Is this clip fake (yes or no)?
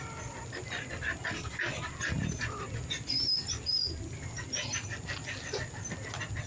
no